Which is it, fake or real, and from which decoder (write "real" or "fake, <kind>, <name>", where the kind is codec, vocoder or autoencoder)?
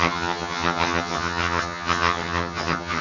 fake, vocoder, HiFi-GAN